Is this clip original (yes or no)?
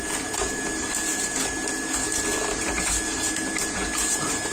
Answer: yes